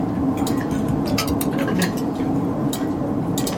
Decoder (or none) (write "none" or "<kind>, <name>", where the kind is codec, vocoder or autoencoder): none